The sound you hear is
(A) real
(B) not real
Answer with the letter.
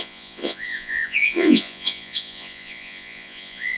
B